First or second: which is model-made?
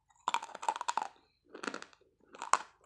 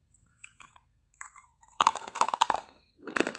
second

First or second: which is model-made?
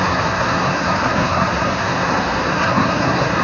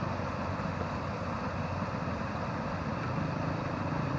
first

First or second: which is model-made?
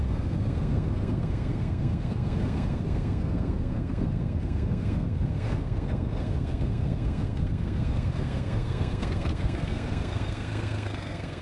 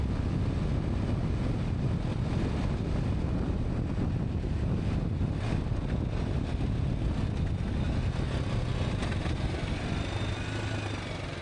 first